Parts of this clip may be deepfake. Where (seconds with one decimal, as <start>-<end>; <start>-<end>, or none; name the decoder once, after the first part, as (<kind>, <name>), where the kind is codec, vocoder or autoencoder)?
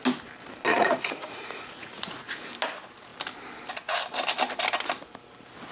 0.7-2.5 (vocoder, Vocos)